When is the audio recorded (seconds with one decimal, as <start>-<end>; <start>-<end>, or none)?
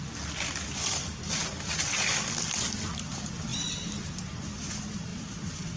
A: 0.0-5.1